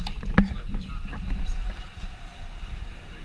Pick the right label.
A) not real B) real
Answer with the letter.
A